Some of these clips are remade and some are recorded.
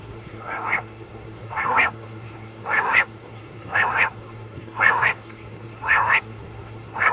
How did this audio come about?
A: remade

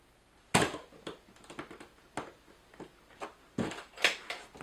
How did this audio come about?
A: recorded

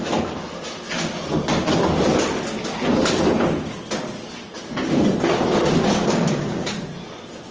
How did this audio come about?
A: recorded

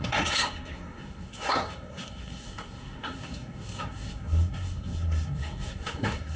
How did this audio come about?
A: remade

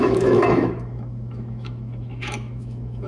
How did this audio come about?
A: remade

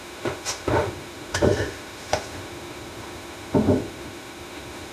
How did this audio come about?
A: remade